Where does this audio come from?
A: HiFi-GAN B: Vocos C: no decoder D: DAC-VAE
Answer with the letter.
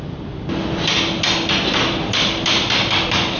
C